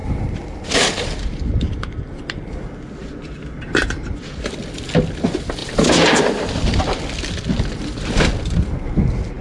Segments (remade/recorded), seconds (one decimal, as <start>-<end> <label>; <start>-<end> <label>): 0.0-2.0 remade; 2.0-3.0 recorded; 3.0-4.8 remade; 4.8-5.6 recorded; 5.6-7.3 remade; 7.3-9.4 recorded